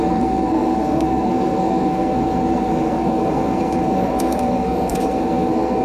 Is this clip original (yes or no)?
no